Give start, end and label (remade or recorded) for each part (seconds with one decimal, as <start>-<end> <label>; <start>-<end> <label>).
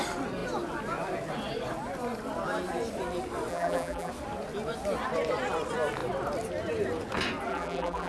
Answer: 0.0-3.5 recorded; 3.5-4.1 remade; 4.1-7.5 recorded; 7.5-8.1 remade